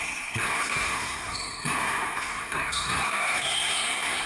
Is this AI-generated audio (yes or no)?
yes